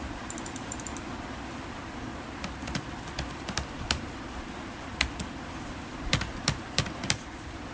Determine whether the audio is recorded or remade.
remade